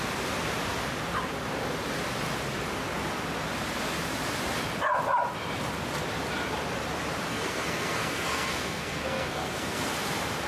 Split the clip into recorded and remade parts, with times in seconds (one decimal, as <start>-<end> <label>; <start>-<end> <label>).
0.0-7.3 recorded; 7.3-9.9 remade; 9.9-10.5 recorded